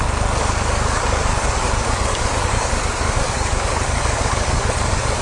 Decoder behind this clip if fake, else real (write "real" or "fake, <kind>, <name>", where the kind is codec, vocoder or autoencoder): fake, codec, DAC